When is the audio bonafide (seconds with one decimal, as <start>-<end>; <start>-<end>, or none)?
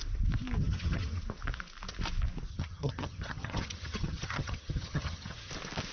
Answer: 0.0-0.6; 1.2-2.5; 5.5-5.9